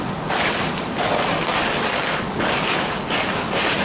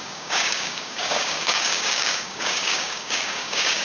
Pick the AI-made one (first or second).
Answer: second